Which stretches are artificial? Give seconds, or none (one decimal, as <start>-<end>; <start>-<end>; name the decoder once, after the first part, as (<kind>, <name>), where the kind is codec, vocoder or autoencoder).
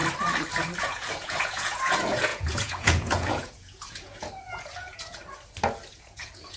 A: 0.8-5.2 (vocoder, Vocos); 5.9-6.6